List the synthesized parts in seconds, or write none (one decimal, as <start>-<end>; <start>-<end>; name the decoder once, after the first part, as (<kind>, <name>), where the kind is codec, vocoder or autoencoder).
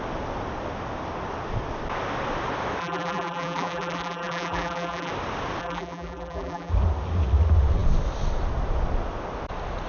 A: 2.8-5.1 (vocoder, BigVGAN v2); 5.6-6.7